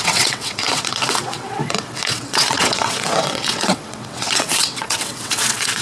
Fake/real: fake